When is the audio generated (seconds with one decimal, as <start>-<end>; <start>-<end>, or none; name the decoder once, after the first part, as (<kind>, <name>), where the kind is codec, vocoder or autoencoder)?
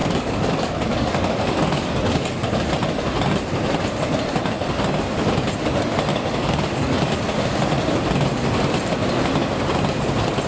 0.0-2.7 (codec, DAC); 6.1-7.2